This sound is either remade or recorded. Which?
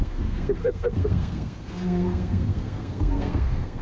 remade